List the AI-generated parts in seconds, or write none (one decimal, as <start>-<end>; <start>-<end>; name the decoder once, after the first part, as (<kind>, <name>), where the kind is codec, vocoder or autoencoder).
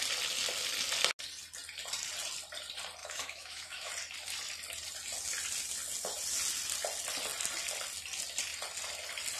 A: 3.0-3.9 (autoencoder, DAC-VAE)